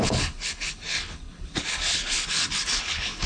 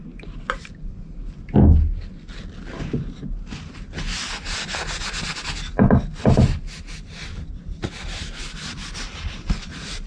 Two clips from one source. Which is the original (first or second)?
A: second